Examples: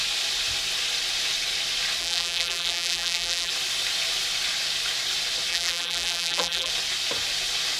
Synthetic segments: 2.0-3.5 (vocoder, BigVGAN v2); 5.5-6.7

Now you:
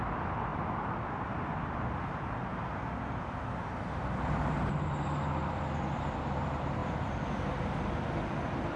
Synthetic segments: 6.8-7.3 (vocoder, BigVGAN v2)

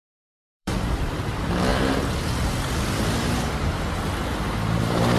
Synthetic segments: 0.0-1.7 (vocoder, BigVGAN v2); 4.8-5.2